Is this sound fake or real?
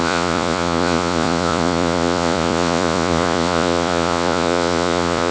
fake